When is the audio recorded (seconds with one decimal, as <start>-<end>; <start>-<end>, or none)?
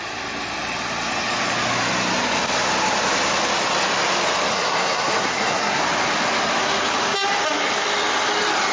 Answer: 0.0-4.5; 5.8-8.7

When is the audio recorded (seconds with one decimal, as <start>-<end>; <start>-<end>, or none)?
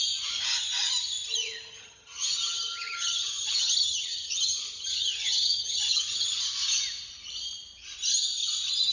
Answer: 0.0-1.4; 6.4-8.9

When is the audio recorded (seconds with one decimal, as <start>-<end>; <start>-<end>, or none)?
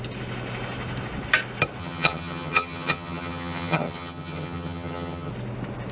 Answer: 0.0-1.8; 5.3-5.9